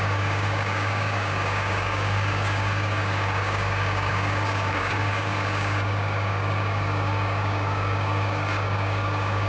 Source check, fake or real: fake